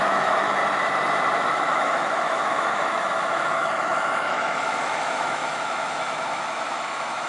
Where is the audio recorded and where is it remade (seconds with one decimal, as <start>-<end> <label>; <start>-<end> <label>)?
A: 0.0-0.6 remade; 0.6-1.5 recorded; 1.5-7.3 remade